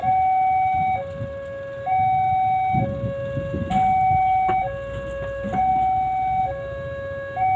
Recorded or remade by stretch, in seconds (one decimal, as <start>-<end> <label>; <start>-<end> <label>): 0.0-7.6 recorded